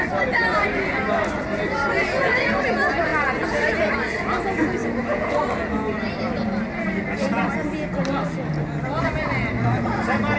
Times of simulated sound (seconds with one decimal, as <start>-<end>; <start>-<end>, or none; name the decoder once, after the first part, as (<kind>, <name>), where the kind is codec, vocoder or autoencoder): none